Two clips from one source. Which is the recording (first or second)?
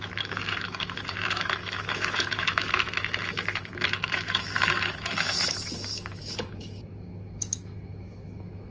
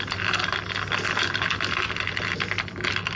second